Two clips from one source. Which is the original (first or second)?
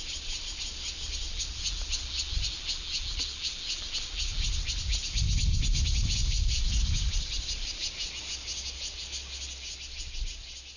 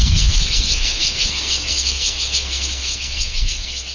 first